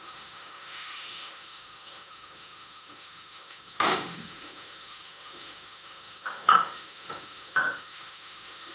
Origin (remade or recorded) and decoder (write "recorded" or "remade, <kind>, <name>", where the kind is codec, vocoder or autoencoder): remade, autoencoder, DAC-VAE